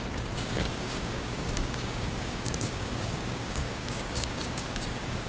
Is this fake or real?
fake